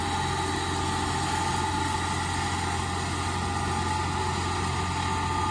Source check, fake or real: real